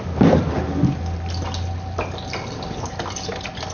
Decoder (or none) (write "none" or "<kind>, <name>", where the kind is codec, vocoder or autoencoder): none